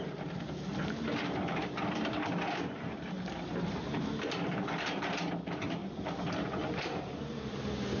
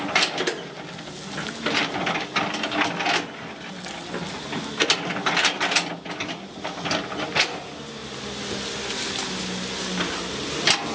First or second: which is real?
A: second